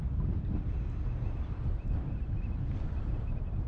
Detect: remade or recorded recorded